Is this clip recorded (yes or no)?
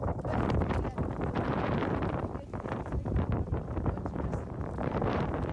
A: no